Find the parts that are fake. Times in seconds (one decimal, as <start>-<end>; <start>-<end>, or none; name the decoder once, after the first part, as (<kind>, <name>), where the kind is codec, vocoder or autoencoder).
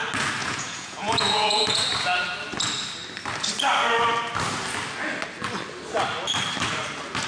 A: 0.4-1.8 (vocoder, Vocos)